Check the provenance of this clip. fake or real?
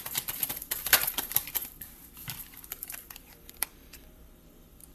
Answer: fake